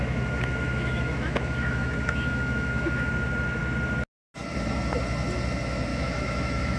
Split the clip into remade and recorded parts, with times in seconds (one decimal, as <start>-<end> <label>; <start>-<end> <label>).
0.0-3.1 remade; 3.1-5.9 recorded; 5.9-6.8 remade